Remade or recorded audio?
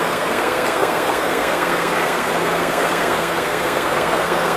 remade